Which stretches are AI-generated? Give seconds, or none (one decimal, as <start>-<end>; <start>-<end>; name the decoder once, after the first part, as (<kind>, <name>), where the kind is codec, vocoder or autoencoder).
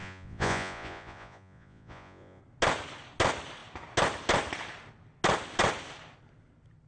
0.0-2.4 (vocoder, Vocos)